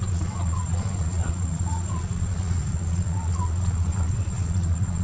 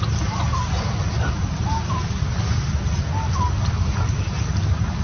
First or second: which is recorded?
second